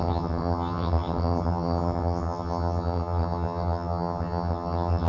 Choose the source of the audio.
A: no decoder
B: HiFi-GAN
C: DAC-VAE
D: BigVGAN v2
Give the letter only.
B